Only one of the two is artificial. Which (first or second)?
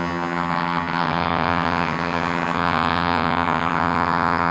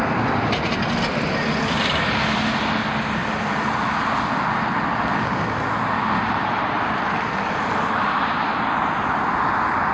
first